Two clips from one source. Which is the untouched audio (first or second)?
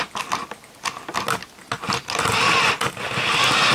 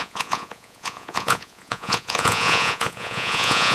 first